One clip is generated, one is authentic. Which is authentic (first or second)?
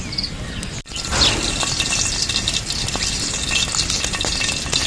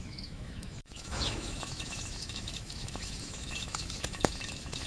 first